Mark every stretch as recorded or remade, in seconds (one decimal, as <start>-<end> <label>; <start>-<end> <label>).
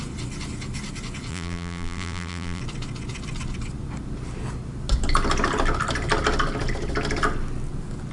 0.0-1.3 recorded; 1.3-2.6 remade; 2.6-8.1 recorded